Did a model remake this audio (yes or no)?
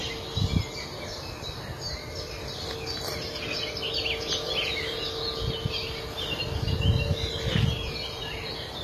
no